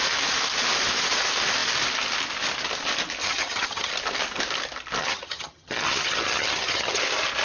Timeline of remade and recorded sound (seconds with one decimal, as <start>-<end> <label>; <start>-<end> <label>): 0.0-3.2 recorded; 3.2-3.9 remade; 3.9-5.0 recorded; 5.0-7.0 remade; 7.0-7.4 recorded